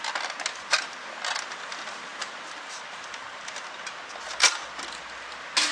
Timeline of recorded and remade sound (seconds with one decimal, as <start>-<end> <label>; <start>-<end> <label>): 0.0-5.7 recorded

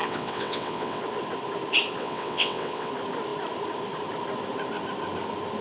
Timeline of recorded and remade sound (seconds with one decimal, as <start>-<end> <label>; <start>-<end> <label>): 0.0-1.0 remade; 1.0-2.0 recorded; 2.0-2.9 remade; 2.9-5.6 recorded

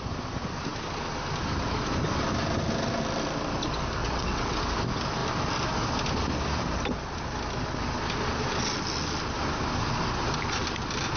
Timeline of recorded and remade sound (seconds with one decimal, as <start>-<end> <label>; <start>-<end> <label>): 0.0-4.0 recorded; 4.0-4.6 remade; 4.6-11.2 recorded

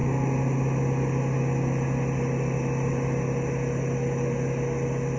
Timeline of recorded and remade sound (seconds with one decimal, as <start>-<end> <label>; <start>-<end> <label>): 0.0-5.2 recorded

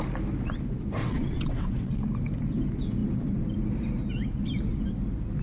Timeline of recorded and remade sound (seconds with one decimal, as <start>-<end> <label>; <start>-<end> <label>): 0.0-1.0 recorded; 1.0-2.0 remade; 2.0-5.4 recorded

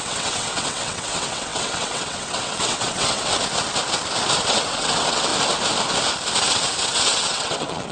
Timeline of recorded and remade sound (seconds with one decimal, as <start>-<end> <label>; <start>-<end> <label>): 0.0-3.3 remade; 3.3-4.4 recorded; 4.4-5.3 remade; 5.3-6.4 recorded; 6.4-7.9 remade

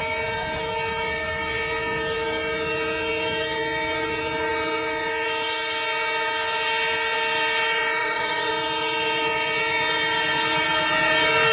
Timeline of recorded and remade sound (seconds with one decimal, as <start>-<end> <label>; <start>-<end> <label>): 0.0-8.0 recorded; 8.0-8.5 remade; 8.5-11.5 recorded